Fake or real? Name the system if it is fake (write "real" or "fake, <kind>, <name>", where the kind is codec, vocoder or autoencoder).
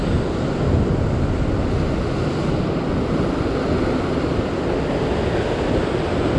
real